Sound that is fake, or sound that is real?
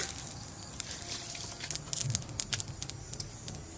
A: real